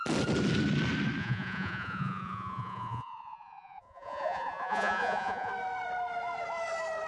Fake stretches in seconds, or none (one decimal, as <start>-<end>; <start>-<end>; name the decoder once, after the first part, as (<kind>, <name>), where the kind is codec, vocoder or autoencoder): 1.2-5.5 (vocoder, Vocos)